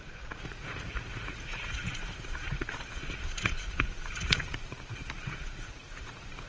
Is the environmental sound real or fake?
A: fake